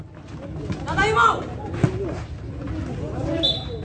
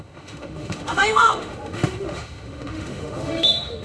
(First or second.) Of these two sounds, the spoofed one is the second